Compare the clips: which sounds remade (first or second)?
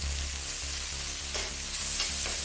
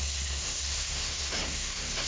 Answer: second